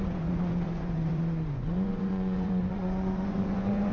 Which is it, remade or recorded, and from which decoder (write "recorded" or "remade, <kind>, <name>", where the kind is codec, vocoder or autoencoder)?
remade, vocoder, Vocos